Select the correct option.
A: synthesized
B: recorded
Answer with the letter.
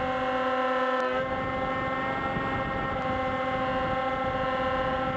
B